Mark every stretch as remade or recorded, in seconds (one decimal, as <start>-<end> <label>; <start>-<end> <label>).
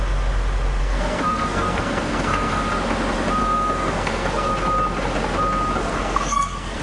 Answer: 0.0-0.8 recorded; 0.8-2.6 remade; 2.6-3.4 recorded; 3.4-4.5 remade; 4.5-5.9 recorded; 5.9-6.8 remade